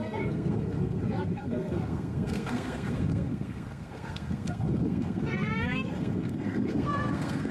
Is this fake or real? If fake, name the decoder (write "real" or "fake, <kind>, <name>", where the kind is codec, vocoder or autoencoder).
fake, codec, SNAC